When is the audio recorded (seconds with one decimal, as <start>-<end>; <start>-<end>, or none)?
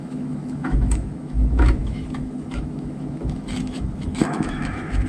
none